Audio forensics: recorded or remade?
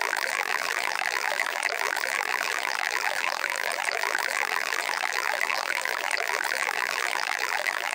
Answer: remade